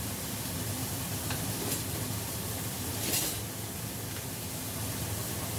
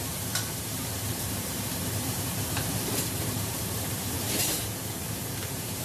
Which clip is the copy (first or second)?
second